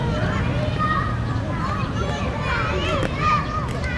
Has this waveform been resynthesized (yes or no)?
yes